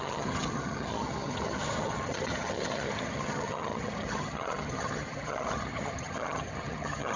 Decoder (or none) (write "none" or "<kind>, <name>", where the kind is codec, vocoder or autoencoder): vocoder, HiFi-GAN